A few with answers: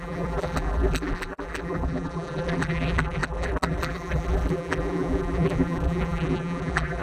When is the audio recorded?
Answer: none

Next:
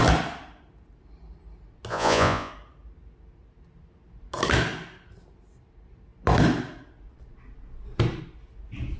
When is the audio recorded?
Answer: 0.0-1.9; 2.5-9.0

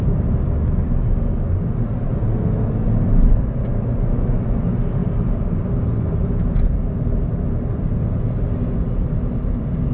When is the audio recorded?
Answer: 0.0-9.9

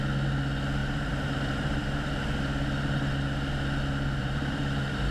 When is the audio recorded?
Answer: 0.0-0.8; 2.4-4.2